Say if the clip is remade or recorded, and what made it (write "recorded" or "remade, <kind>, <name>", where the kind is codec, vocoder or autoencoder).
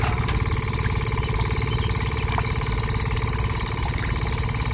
recorded